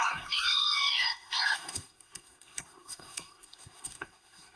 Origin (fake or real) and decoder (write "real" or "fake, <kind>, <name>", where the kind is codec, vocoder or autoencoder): fake, codec, SNAC